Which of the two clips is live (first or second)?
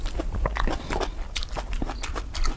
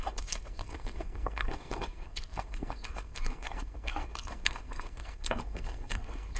first